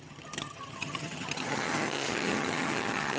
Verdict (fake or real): fake